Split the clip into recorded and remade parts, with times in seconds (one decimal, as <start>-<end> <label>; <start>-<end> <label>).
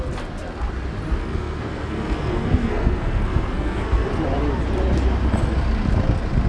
0.0-1.2 recorded; 1.2-4.1 remade; 4.1-6.5 recorded